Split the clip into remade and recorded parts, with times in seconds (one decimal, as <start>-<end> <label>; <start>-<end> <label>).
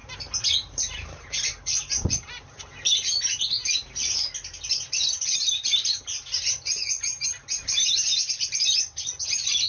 0.0-9.7 remade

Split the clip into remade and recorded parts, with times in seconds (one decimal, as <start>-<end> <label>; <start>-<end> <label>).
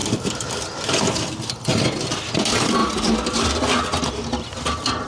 0.0-5.1 recorded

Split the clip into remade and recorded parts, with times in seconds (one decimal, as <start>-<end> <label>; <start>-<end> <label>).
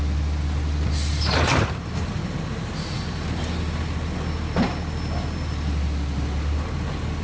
0.0-1.1 recorded; 1.1-2.1 remade; 2.1-7.2 recorded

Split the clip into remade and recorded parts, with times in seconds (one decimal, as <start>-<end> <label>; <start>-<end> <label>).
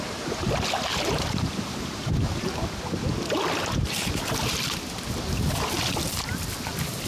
0.0-0.9 recorded; 0.9-2.8 remade; 2.8-7.1 recorded